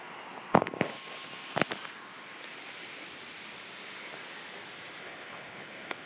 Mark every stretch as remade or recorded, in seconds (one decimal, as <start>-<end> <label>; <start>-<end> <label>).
0.0-5.0 recorded; 5.0-6.1 remade